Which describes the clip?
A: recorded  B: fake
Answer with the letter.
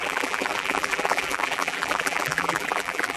B